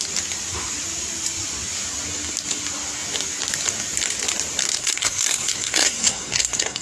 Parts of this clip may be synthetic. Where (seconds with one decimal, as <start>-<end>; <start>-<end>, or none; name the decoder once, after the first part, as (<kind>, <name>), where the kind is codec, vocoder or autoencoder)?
4.8-6.8 (codec, SNAC)